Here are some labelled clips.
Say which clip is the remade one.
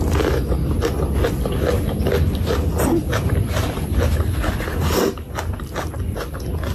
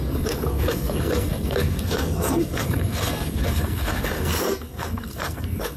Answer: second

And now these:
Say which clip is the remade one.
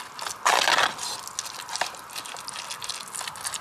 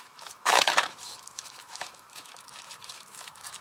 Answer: second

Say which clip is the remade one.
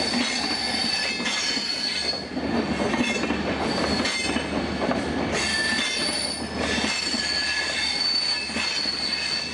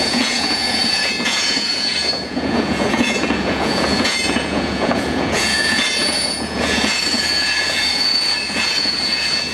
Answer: second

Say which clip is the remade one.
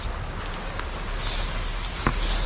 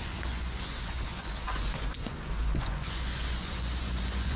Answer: second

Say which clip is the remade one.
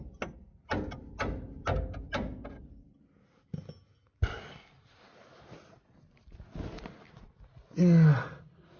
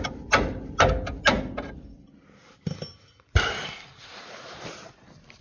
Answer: second